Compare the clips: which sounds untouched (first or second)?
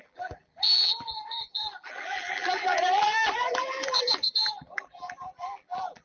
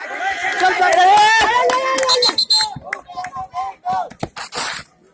second